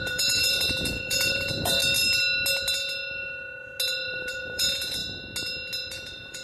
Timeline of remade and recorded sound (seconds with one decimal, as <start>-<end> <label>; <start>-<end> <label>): 0.0-1.8 remade; 1.8-3.9 recorded; 3.9-5.0 remade; 5.0-5.9 recorded; 5.9-6.4 remade